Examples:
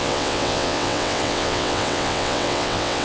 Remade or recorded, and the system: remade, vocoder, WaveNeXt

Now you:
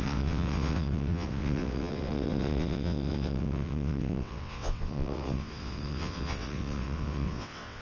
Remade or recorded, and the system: remade, vocoder, WaveNeXt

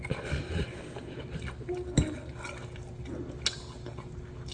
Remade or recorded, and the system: recorded